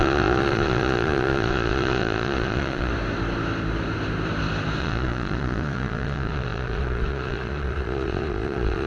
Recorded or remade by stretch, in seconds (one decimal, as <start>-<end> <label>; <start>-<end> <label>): 0.0-2.9 remade; 2.9-4.8 recorded; 4.8-8.9 remade